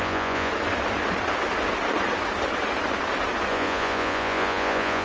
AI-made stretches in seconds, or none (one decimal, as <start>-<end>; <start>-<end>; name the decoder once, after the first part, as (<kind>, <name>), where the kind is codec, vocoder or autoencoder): 0.0-0.5 (vocoder, Vocos); 3.5-5.0